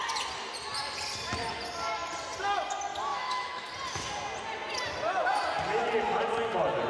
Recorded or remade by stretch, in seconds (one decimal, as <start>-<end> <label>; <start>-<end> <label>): 0.0-3.1 recorded; 3.1-3.7 remade; 3.7-6.9 recorded